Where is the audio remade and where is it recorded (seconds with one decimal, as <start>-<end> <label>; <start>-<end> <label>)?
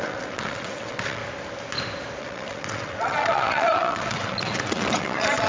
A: 0.0-1.2 remade; 1.2-2.2 recorded; 2.2-5.5 remade